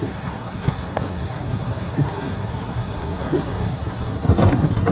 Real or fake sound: fake